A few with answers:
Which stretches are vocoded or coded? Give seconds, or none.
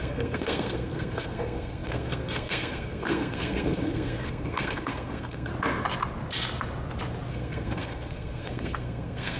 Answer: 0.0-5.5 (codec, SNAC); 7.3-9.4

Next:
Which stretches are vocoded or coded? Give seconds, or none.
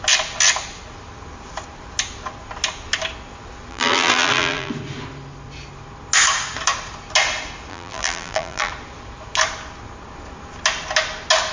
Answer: 3.7-4.7 (vocoder, BigVGAN v2); 7.7-8.7